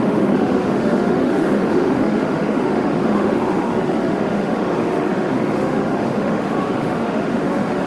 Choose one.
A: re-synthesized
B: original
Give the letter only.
A